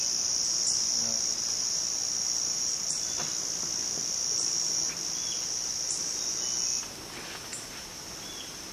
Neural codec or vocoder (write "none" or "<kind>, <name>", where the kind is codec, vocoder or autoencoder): none